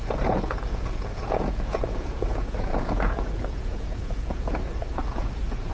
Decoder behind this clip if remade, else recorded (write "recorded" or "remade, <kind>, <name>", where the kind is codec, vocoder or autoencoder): remade, vocoder, Vocos